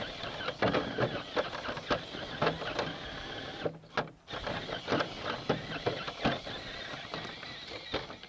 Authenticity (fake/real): real